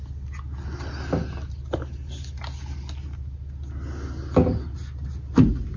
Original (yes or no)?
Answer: yes